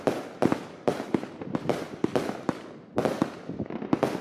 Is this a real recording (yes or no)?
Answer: yes